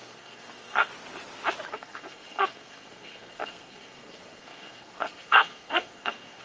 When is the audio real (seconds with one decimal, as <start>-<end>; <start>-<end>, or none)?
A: 0.9-1.7